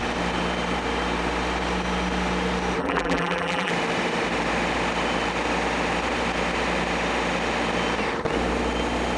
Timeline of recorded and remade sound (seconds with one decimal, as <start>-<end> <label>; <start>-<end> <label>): 0.0-2.8 recorded; 2.8-3.7 remade; 3.7-9.2 recorded